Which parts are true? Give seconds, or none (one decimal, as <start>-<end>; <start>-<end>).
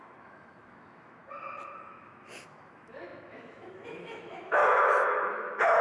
1.2-1.9; 4.6-5.3